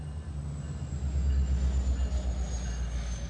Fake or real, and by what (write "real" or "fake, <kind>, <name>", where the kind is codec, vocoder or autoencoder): real